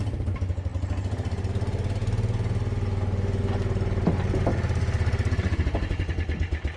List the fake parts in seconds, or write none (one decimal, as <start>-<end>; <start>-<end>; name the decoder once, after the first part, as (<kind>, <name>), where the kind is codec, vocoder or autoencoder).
none